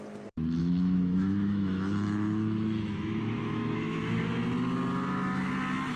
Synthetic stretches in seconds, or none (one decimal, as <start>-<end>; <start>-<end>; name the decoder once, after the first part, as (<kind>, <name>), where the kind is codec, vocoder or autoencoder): 0.6-4.2 (autoencoder, DAC-VAE)